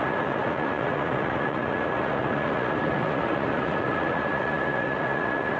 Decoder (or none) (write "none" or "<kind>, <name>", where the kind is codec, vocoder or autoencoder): vocoder, Vocos